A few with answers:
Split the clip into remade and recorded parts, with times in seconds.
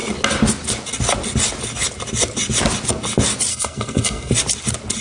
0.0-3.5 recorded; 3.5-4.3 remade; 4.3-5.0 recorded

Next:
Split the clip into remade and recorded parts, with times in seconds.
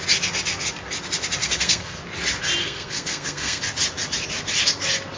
0.0-1.4 recorded; 1.4-2.0 remade; 2.0-2.6 recorded; 2.6-3.6 remade; 3.6-5.2 recorded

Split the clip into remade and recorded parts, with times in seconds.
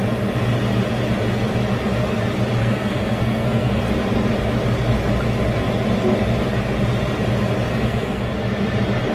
0.0-2.6 recorded; 2.6-3.8 remade; 3.8-7.7 recorded; 7.7-8.3 remade; 8.3-9.1 recorded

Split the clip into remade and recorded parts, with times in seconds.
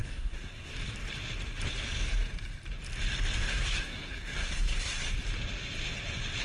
0.0-0.7 remade; 0.7-3.5 recorded; 3.5-5.0 remade; 5.0-6.4 recorded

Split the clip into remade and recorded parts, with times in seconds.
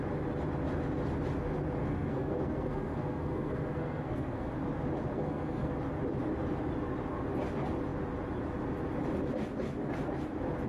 0.0-1.8 recorded; 1.8-4.5 remade; 4.5-5.1 recorded; 5.1-5.7 remade; 5.7-10.7 recorded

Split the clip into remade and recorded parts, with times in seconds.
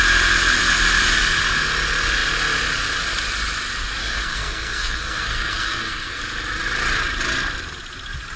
0.0-4.0 recorded; 4.0-6.2 remade; 6.2-8.4 recorded